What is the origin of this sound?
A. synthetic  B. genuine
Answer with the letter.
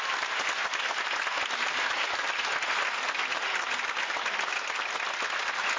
B